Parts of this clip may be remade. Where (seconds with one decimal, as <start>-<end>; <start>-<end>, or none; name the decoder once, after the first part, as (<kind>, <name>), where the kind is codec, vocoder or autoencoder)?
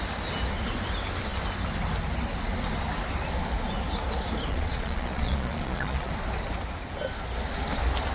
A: 4.5-6.1 (vocoder, Vocos)